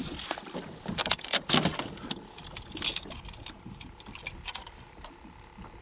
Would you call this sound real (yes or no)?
yes